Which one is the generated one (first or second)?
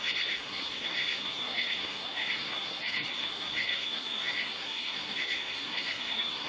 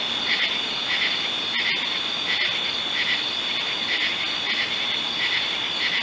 first